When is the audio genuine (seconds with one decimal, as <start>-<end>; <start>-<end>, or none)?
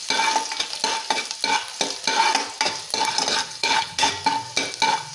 0.0-3.5; 4.1-5.1